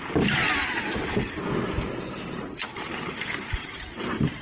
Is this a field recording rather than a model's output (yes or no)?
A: no